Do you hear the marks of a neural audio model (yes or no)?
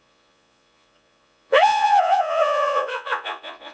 yes